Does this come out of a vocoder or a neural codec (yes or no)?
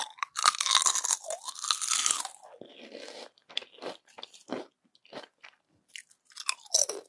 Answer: no